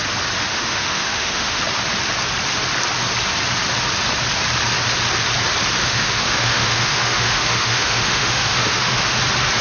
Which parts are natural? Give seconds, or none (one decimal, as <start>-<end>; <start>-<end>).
0.0-0.5; 1.6-5.8; 9.2-9.6